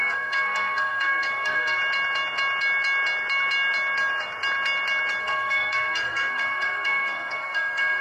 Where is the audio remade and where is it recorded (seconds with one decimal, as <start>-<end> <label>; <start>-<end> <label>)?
0.0-1.8 remade; 1.8-5.2 recorded; 5.2-8.0 remade